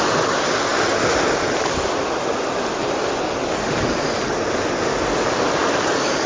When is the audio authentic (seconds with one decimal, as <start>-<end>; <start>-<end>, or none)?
0.0-5.6